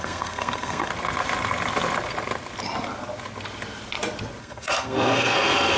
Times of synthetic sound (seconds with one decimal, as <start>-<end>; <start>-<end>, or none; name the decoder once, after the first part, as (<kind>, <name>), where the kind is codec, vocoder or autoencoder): 0.0-0.9 (codec, SNAC); 4.4-5.8